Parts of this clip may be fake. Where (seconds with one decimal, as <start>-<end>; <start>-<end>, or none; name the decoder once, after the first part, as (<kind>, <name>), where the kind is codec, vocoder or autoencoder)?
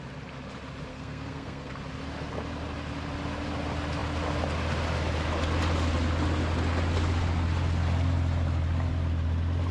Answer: 0.9-1.7 (codec, SNAC)